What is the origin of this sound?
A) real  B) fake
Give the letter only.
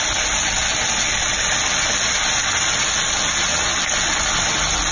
A